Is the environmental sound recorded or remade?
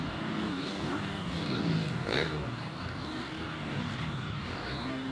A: remade